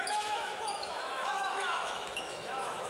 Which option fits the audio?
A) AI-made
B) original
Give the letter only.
A